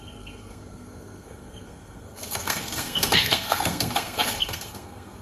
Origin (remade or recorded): remade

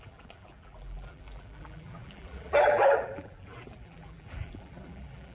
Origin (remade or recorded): remade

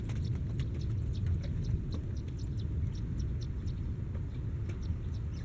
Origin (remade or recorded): recorded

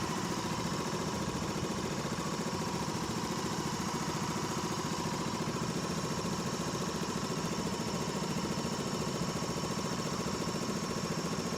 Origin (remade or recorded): remade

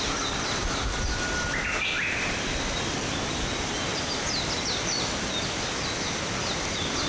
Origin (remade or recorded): recorded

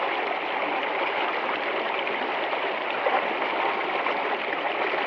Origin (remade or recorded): recorded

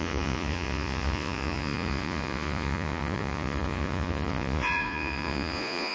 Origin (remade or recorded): remade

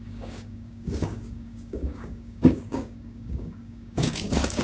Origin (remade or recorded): remade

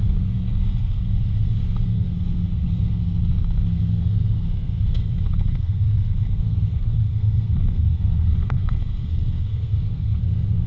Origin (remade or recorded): remade